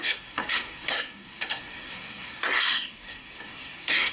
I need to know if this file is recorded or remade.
remade